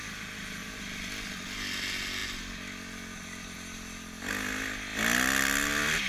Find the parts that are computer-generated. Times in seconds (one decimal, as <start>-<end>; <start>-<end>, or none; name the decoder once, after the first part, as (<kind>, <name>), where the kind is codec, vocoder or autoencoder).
none